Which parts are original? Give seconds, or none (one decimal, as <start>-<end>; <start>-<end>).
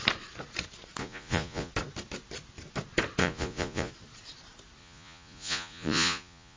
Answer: 0.0-1.0; 1.7-3.2; 3.9-4.8